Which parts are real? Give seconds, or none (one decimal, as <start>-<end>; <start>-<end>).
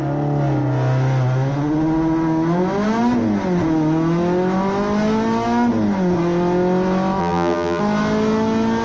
0.0-7.2; 7.8-8.8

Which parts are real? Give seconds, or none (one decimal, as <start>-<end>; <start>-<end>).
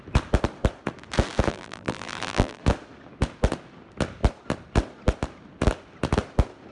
0.0-1.5; 2.6-6.7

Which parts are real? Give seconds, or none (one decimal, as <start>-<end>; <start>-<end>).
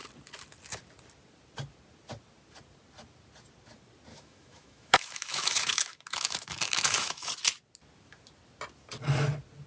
0.0-4.1; 7.3-9.7